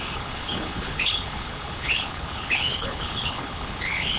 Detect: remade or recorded remade